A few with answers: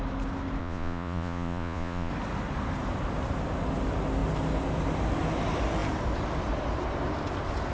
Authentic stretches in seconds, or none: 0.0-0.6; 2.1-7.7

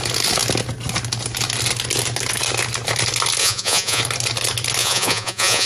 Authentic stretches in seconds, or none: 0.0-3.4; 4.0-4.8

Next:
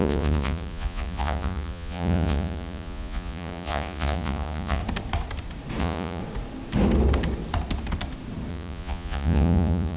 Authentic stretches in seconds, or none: 4.8-5.8; 6.2-8.5